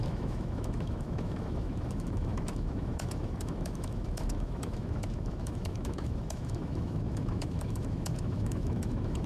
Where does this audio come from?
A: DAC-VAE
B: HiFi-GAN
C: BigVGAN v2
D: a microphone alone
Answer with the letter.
A